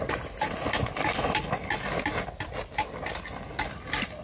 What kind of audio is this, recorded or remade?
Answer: recorded